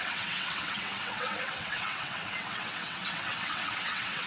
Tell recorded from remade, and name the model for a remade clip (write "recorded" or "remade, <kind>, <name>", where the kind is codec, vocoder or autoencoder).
remade, vocoder, WaveNeXt